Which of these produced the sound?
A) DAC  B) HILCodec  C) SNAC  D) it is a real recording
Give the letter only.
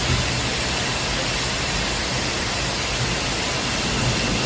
D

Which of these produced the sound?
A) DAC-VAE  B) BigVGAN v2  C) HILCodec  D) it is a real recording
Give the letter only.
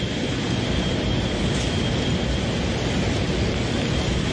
D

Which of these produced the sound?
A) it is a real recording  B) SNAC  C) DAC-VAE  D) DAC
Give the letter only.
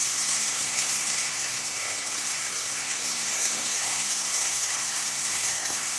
B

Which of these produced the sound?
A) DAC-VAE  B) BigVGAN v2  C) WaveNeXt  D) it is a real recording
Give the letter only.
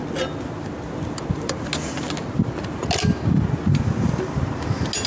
D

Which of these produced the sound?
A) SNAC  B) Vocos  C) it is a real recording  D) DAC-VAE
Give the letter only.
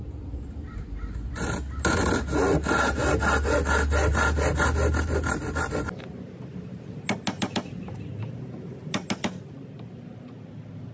C